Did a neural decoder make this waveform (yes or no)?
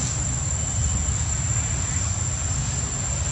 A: no